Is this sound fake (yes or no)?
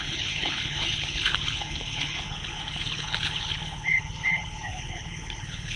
yes